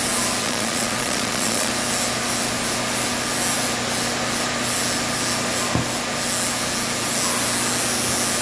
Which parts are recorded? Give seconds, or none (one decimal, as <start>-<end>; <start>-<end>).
0.0-0.4; 1.7-8.4